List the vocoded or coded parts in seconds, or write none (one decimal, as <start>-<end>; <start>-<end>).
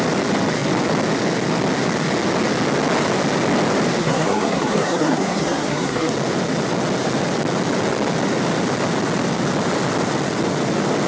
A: 4.0-6.1